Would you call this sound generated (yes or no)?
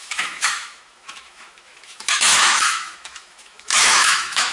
yes